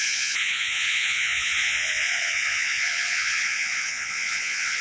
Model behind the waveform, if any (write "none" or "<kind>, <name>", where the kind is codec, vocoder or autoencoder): vocoder, Vocos